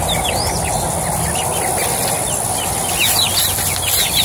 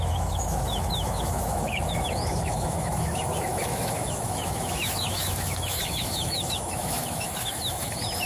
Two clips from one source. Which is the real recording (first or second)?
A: first